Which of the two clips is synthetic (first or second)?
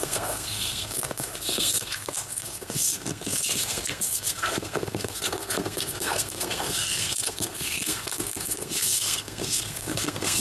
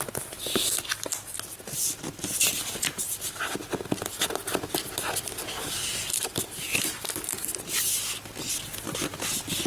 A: first